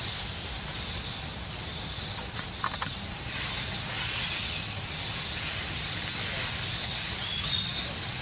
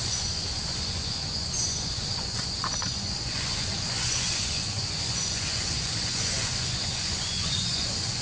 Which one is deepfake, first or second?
second